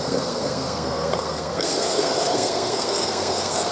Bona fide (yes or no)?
no